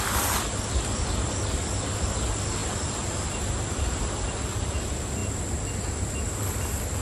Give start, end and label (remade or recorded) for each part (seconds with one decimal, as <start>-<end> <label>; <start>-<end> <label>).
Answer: 0.0-7.0 recorded